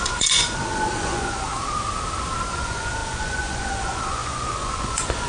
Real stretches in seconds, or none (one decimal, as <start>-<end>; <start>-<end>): 1.5-2.5